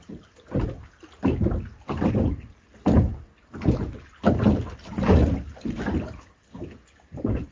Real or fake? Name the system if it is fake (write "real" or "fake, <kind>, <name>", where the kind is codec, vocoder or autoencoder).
real